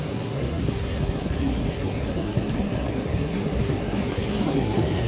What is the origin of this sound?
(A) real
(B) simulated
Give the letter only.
B